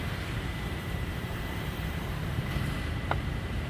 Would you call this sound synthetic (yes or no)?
yes